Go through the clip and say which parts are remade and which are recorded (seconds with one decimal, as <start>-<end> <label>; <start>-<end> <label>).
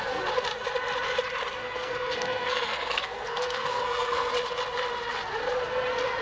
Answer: 0.0-1.6 recorded; 1.6-4.3 remade; 4.3-6.2 recorded